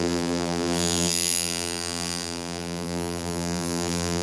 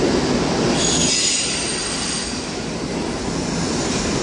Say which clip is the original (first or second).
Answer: second